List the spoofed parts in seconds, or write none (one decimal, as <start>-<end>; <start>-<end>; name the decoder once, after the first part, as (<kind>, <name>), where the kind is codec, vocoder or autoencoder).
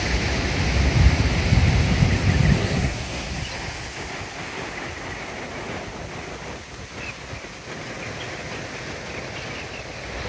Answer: 2.6-3.4 (codec, SNAC)